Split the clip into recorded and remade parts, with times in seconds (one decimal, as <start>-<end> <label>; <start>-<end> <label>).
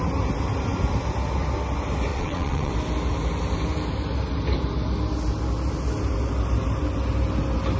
0.0-2.1 recorded; 2.1-2.7 remade; 2.7-7.8 recorded